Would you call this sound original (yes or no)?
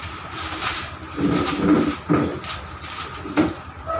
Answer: yes